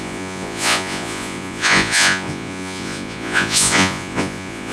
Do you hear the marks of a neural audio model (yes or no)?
yes